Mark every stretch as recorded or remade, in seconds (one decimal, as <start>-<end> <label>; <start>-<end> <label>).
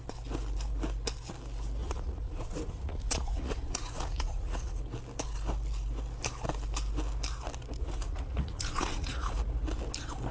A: 0.0-1.8 recorded; 1.8-4.8 remade; 4.8-7.8 recorded; 7.8-9.4 remade; 9.4-10.3 recorded